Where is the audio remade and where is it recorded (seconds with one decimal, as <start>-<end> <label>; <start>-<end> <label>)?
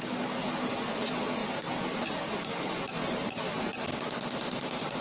0.0-5.0 recorded